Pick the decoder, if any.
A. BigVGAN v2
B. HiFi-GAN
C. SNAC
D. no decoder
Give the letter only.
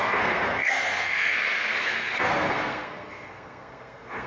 C